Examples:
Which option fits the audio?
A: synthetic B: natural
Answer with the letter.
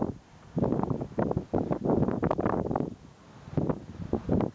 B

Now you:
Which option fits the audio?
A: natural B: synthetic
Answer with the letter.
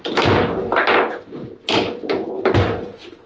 A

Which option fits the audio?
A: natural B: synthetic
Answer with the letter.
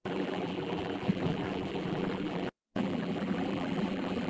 B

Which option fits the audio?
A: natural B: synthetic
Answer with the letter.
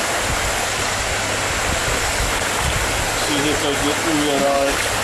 A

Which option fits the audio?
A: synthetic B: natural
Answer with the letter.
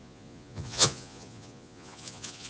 A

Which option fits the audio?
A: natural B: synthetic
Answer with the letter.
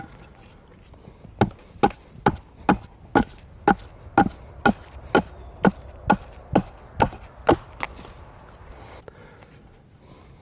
A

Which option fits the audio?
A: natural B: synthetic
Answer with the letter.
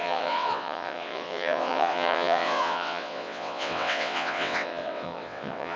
B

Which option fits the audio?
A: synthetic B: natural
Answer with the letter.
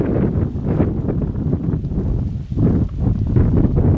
B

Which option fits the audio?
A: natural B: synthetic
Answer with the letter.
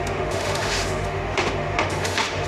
B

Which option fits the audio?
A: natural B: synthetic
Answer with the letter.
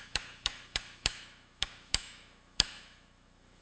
B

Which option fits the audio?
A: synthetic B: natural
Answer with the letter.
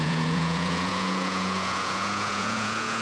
A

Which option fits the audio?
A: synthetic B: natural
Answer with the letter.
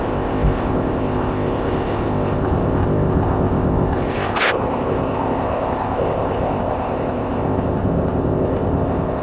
A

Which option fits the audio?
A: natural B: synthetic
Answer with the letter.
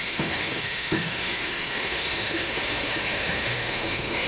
B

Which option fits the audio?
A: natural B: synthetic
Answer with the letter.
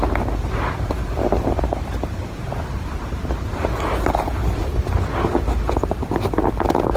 A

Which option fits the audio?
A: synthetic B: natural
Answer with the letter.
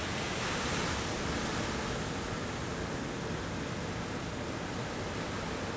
B